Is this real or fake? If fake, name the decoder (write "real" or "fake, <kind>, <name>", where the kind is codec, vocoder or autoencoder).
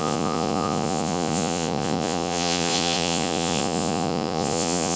fake, vocoder, Vocos